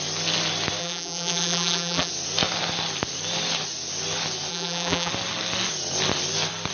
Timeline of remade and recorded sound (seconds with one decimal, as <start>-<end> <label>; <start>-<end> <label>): 0.0-0.8 recorded; 0.8-2.1 remade; 2.1-4.5 recorded; 4.5-5.1 remade; 5.1-6.7 recorded